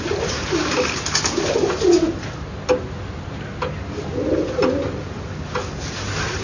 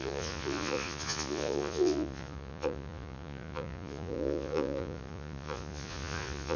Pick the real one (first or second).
first